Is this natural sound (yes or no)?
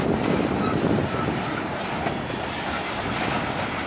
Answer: yes